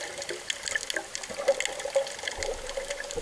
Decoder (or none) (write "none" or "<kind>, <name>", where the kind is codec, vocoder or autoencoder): none